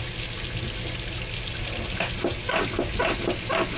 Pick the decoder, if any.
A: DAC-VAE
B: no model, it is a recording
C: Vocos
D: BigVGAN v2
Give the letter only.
B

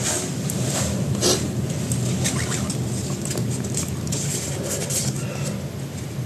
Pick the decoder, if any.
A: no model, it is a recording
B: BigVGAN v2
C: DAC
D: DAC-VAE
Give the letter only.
A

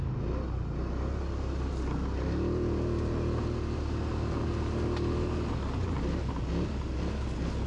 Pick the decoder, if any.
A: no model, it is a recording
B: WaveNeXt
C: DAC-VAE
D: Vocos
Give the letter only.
A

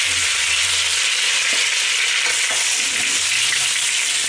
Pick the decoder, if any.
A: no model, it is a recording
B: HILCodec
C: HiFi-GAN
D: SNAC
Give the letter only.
A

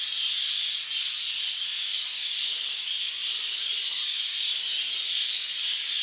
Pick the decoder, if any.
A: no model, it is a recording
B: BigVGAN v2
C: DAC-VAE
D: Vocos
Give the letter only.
B